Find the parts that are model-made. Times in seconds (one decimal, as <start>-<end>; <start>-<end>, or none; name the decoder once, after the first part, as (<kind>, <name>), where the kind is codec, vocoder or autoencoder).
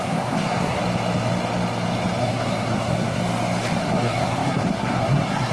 0.0-0.8 (codec, SNAC); 2.2-3.2; 3.8-5.5